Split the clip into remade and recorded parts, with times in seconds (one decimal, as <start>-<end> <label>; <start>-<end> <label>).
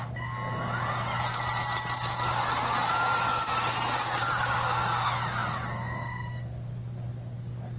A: 0.0-7.8 recorded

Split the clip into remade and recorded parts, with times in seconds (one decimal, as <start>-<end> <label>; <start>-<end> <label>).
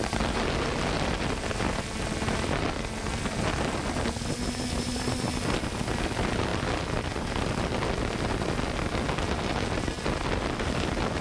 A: 0.0-11.2 recorded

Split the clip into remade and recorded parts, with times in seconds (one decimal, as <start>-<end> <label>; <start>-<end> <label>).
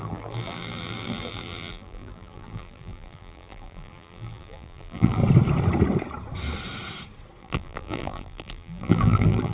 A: 0.0-5.2 remade; 5.2-7.4 recorded; 7.4-9.5 remade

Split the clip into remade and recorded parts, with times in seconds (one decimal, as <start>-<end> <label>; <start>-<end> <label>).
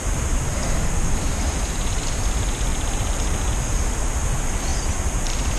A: 0.0-2.7 recorded; 2.7-3.5 remade; 3.5-4.7 recorded; 4.7-5.6 remade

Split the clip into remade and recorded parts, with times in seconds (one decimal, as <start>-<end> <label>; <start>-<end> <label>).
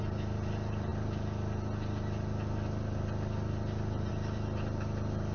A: 0.0-5.3 recorded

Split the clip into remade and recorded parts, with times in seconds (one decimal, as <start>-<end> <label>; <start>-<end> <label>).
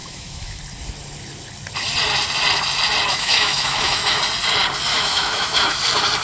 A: 0.0-0.6 remade; 0.6-3.1 recorded; 3.1-4.2 remade; 4.2-4.9 recorded; 4.9-5.8 remade; 5.8-6.2 recorded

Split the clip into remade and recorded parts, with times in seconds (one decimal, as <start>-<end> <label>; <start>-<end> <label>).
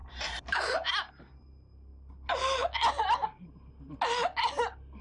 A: 0.0-1.1 remade; 1.1-5.0 recorded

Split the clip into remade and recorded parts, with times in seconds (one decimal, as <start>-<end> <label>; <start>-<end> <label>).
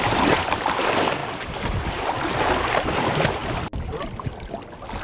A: 0.0-5.0 recorded